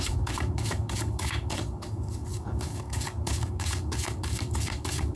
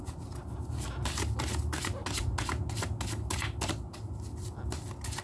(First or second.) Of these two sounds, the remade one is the first